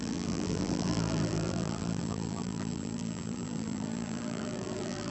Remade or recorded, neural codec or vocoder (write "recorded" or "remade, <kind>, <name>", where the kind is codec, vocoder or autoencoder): remade, vocoder, BigVGAN v2